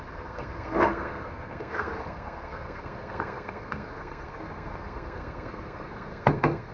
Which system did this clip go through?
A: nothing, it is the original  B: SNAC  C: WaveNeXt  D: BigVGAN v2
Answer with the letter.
B